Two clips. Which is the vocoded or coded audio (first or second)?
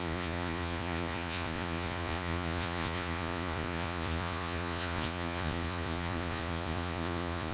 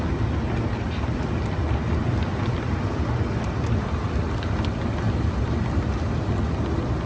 first